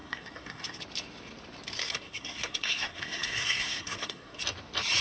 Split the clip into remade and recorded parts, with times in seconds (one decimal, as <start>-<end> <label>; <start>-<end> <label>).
0.0-0.8 remade; 0.8-1.8 recorded; 1.8-4.4 remade; 4.4-5.0 recorded